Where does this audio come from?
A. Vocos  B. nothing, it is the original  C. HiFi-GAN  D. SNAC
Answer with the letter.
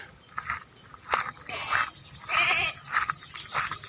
B